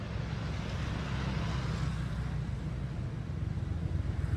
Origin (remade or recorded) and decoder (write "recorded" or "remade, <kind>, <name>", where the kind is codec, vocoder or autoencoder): recorded